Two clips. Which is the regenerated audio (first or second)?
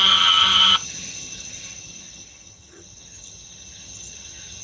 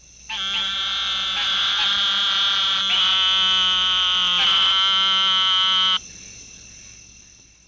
first